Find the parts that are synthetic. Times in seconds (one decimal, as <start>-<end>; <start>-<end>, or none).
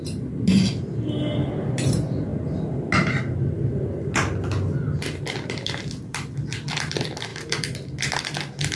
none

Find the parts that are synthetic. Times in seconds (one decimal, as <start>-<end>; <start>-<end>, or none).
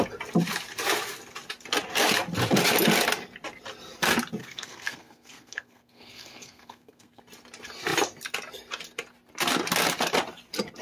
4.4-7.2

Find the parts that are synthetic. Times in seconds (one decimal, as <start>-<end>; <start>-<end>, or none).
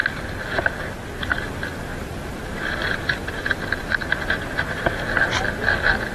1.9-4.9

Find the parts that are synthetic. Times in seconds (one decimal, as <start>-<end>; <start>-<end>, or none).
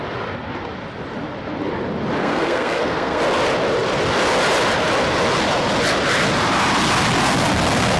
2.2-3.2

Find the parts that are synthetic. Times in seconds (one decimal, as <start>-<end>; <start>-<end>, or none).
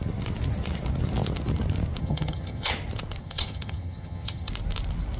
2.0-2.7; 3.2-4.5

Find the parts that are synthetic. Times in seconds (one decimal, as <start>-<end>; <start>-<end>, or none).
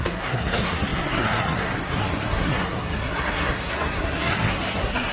0.0-5.1